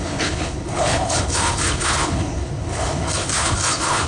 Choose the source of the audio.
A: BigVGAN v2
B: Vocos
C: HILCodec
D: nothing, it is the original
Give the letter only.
C